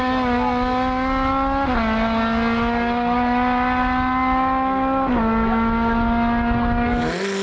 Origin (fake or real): real